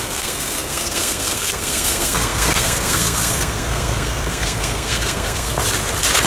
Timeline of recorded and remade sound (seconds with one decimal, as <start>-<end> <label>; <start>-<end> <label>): 0.0-5.6 remade; 5.6-6.3 recorded